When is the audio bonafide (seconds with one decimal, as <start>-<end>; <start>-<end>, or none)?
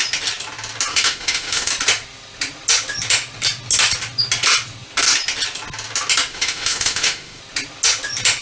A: 0.0-0.9; 1.7-6.3; 7.4-8.4